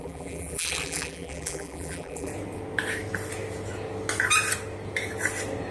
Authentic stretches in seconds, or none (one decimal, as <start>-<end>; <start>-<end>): 2.3-5.7

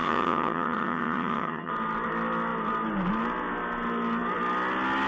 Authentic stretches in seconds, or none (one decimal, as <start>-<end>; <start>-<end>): 1.7-5.1